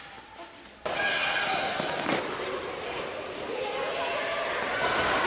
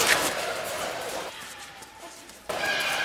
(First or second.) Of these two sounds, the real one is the first